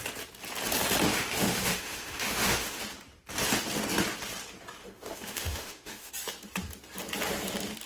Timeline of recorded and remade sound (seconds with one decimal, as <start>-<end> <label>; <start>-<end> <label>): 0.0-1.1 recorded; 1.1-2.8 remade; 2.8-4.8 recorded; 4.8-6.1 remade; 6.1-7.9 recorded